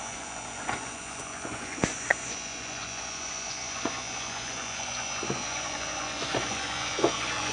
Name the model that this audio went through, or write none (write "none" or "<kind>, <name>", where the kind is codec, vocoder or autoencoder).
vocoder, Vocos